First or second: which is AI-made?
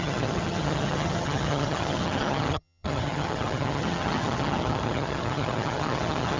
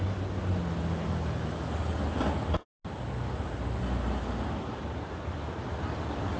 first